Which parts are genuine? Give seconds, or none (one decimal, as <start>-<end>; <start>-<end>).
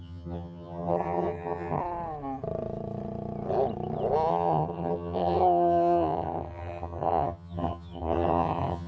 1.8-4.3